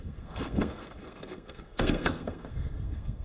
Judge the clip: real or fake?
fake